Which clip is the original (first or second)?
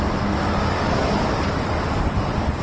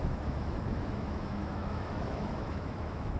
first